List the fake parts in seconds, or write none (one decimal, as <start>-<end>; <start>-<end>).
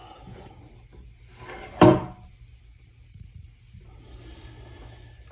none